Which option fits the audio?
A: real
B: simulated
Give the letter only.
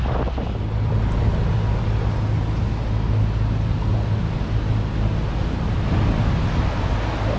A